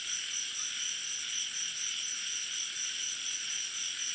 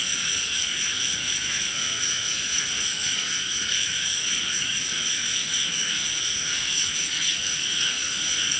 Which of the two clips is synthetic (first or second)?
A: second